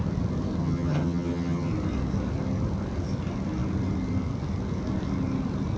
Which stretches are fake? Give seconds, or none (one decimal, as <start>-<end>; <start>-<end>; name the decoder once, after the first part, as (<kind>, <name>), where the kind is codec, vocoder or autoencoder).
0.6-1.7 (vocoder, HiFi-GAN)